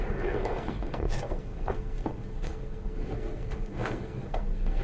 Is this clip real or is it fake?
fake